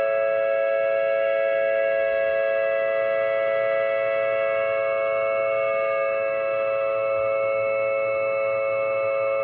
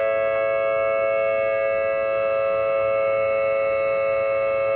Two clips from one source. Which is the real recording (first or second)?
second